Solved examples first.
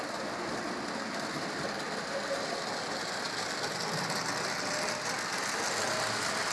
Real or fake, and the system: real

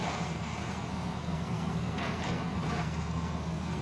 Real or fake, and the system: fake, codec, SNAC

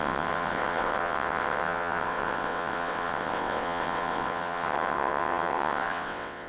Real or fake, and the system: fake, vocoder, WaveNeXt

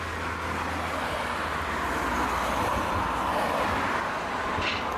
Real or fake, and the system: real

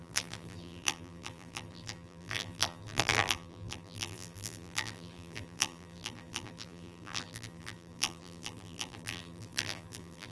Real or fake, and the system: fake, vocoder, BigVGAN v2